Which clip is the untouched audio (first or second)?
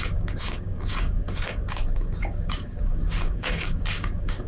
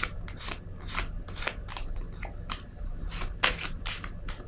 second